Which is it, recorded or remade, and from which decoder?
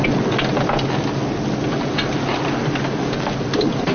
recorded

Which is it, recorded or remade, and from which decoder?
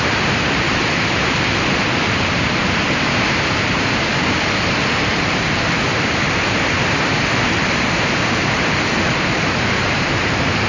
remade, vocoder, BigVGAN v2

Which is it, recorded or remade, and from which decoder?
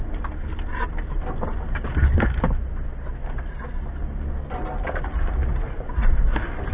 recorded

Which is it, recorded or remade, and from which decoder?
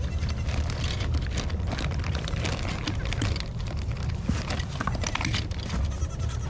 recorded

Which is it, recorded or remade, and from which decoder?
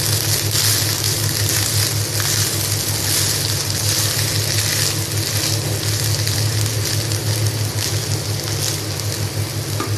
recorded